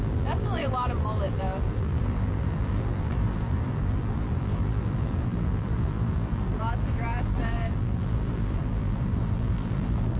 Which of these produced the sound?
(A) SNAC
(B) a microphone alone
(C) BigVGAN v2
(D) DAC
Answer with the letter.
C